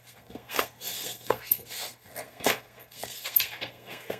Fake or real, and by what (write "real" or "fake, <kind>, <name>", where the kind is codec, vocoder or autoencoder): fake, codec, SNAC